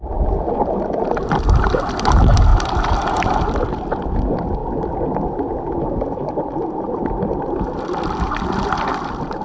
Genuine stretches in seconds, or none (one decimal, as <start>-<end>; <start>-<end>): 0.0-9.4

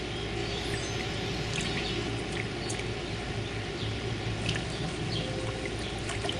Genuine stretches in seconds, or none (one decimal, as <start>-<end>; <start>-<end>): 0.0-6.4